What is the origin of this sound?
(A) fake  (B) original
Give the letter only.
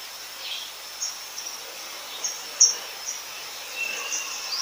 B